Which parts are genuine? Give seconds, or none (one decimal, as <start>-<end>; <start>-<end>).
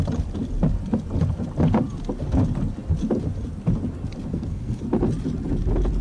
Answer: 0.0-4.3; 4.8-6.0